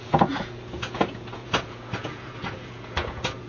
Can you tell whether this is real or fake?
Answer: fake